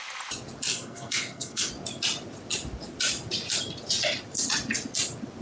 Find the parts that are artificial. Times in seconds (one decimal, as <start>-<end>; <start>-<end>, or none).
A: 0.7-1.7